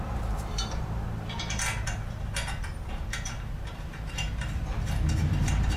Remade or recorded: remade